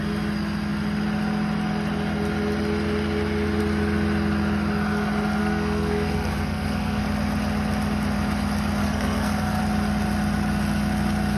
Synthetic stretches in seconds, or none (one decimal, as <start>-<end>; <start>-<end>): 5.4-7.0; 8.8-9.6